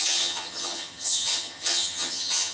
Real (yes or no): no